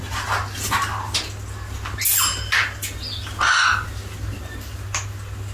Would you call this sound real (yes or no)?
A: yes